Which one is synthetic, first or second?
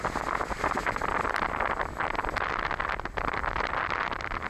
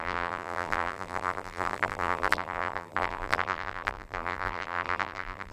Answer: second